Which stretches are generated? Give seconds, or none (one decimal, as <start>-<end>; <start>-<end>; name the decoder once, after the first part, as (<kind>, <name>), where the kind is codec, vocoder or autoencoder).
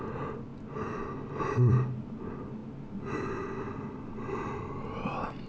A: none